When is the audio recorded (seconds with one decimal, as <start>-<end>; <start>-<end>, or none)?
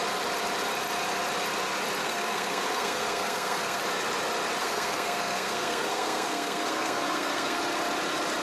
0.0-2.0; 3.8-4.6; 7.6-8.4